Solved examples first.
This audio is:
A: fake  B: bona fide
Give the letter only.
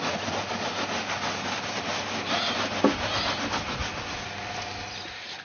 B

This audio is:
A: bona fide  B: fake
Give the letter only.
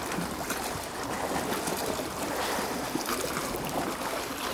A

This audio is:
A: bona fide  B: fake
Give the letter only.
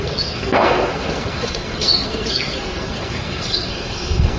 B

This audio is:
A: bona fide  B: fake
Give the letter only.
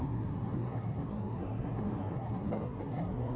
B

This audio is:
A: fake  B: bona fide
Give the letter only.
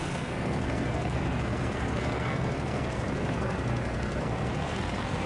A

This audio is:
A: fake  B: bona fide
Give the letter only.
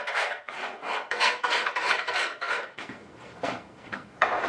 A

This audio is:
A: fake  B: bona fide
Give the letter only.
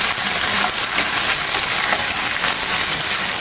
B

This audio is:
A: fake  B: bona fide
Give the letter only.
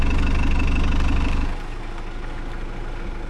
B